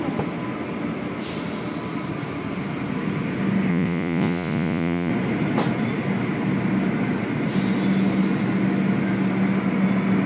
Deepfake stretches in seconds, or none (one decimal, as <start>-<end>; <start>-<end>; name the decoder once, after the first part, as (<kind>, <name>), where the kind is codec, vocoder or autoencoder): 3.7-5.1 (vocoder, Vocos)